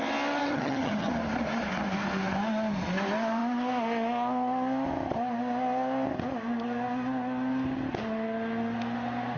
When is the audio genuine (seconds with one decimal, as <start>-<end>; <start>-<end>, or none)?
0.0-0.4; 1.1-9.4